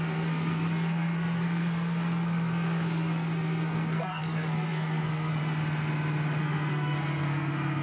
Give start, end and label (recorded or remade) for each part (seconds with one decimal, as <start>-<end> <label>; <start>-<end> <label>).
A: 0.0-5.4 remade; 5.4-6.4 recorded; 6.4-7.8 remade